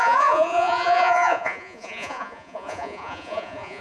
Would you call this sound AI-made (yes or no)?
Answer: yes